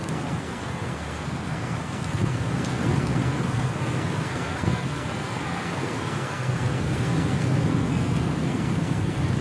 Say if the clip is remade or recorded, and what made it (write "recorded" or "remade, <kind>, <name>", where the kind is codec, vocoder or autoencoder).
remade, codec, SNAC